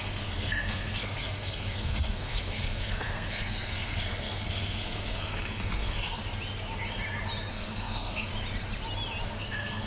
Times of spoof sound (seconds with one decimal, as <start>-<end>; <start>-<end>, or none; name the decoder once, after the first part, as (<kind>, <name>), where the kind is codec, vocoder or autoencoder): 0.0-6.2 (codec, SNAC); 7.5-8.3; 9.4-9.9

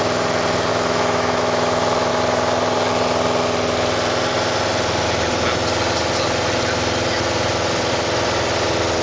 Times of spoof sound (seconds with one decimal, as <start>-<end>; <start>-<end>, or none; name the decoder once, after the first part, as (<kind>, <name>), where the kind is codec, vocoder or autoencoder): 0.7-2.1 (autoencoder, DAC-VAE)